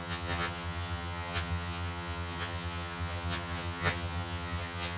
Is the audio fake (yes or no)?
yes